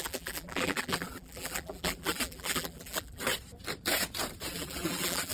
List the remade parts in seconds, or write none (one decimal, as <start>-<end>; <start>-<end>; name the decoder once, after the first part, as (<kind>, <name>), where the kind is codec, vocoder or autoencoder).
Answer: 0.0-3.2 (vocoder, BigVGAN v2); 4.5-5.3